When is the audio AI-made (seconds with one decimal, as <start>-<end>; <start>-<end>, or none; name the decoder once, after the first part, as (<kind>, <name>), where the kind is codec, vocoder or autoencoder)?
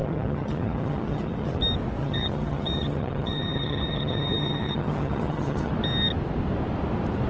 0.0-1.6 (vocoder, HiFi-GAN); 2.0-5.7